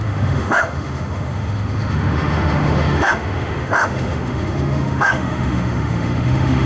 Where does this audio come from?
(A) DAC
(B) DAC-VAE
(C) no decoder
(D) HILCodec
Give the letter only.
B